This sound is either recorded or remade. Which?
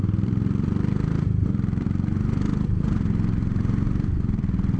remade